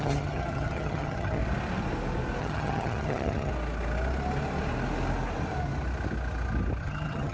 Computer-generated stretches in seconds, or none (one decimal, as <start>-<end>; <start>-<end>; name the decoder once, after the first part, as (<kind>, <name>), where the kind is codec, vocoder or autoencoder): 0.0-1.4 (vocoder, HiFi-GAN); 2.4-3.5; 6.8-7.3